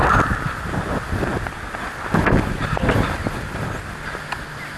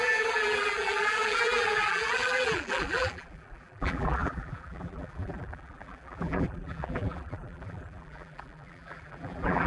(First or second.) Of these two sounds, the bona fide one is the first